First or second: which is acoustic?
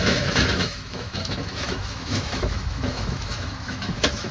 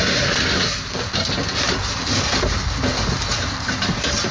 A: second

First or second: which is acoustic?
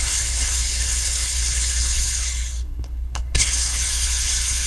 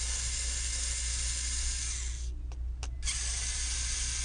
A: second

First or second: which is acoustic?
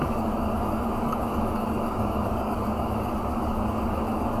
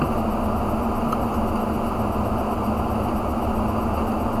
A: second